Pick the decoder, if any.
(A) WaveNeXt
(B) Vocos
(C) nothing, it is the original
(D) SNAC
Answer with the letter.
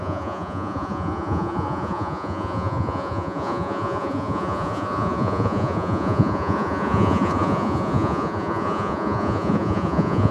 B